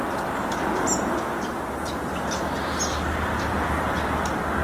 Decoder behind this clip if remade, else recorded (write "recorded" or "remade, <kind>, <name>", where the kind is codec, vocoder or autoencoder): recorded